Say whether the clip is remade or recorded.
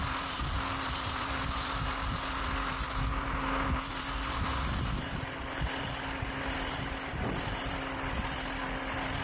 recorded